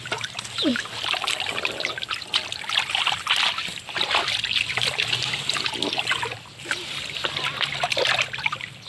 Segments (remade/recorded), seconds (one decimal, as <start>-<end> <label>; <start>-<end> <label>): 0.0-0.7 remade; 0.7-1.5 recorded; 1.5-8.9 remade